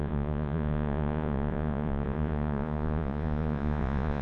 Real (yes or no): no